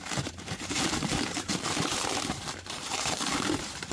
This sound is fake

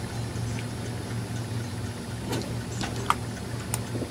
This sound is real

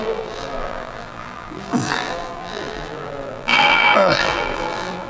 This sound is fake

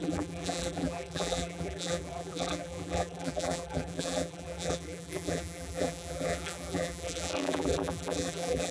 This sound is fake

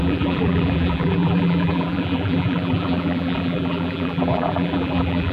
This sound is fake